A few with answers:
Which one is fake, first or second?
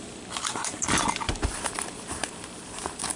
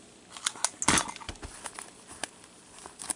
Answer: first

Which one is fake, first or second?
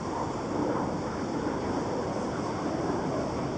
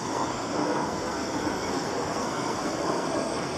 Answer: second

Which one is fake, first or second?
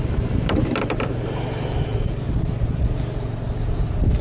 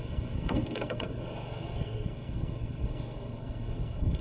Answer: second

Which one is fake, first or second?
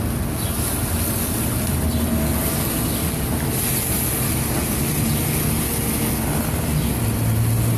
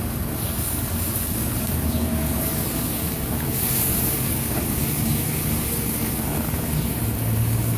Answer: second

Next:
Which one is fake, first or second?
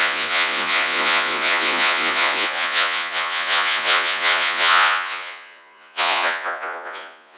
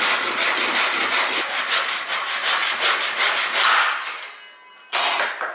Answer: first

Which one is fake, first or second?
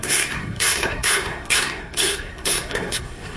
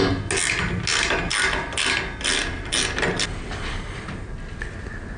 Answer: first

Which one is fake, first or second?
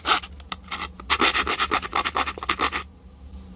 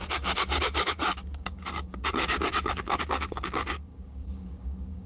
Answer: second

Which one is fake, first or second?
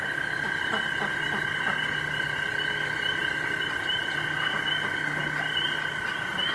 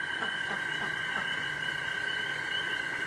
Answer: second